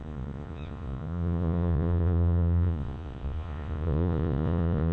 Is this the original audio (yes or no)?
no